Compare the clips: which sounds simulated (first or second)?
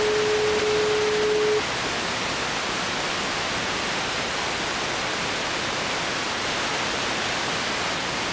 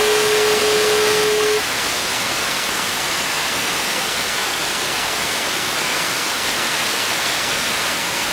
second